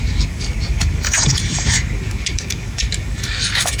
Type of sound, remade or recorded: remade